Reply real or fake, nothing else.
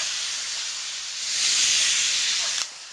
fake